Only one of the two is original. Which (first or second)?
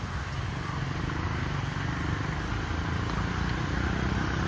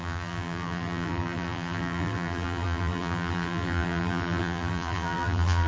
first